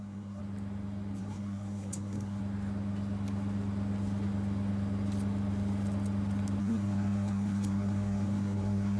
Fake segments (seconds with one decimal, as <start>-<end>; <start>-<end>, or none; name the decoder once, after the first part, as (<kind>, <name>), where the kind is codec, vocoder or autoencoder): 0.0-0.4 (codec, SNAC); 1.2-2.4; 6.6-9.0